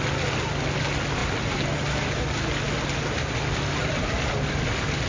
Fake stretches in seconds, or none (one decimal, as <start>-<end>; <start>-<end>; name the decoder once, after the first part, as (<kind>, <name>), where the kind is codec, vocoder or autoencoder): none

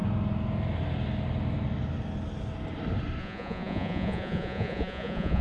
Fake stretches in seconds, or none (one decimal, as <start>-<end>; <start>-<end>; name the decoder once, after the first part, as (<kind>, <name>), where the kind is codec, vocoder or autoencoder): 3.2-5.4 (vocoder, Vocos)

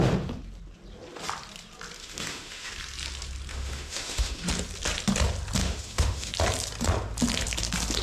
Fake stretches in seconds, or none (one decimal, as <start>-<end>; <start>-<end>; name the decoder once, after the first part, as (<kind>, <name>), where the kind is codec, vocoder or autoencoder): 2.0-2.7 (autoencoder, DAC-VAE); 3.5-4.5; 5.6-6.3

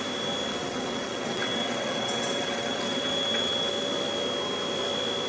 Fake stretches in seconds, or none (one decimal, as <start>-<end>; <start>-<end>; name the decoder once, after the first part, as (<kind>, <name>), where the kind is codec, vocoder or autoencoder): 0.5-3.7 (vocoder, WaveNeXt)